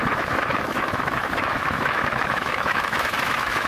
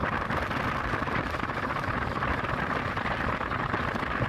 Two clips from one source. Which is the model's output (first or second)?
first